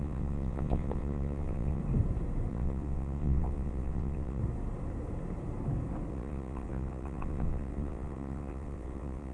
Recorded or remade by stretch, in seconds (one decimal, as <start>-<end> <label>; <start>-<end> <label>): 0.0-1.8 remade; 1.8-2.5 recorded; 2.5-4.4 remade; 4.4-6.1 recorded; 6.1-9.3 remade